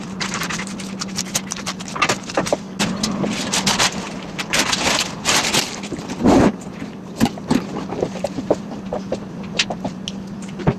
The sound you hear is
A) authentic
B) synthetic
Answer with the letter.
A